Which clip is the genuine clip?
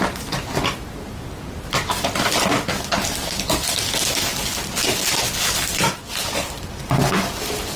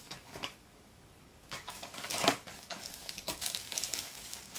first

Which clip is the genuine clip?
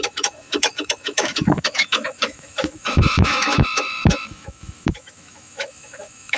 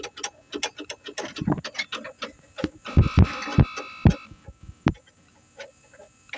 second